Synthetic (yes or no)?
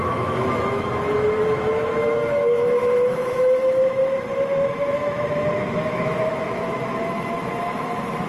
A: yes